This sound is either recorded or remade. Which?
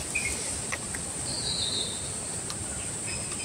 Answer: remade